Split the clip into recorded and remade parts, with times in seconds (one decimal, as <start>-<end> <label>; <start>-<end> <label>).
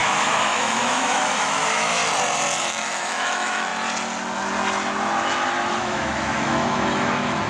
0.0-2.0 remade; 2.0-2.6 recorded; 2.6-3.7 remade; 3.7-5.7 recorded; 5.7-7.5 remade